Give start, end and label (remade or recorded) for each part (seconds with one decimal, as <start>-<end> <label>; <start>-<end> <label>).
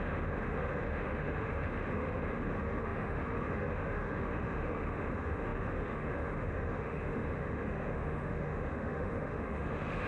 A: 0.0-10.1 remade